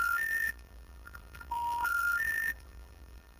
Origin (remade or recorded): remade